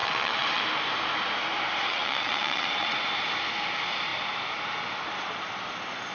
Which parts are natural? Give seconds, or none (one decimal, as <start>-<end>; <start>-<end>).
0.6-1.9; 3.0-6.1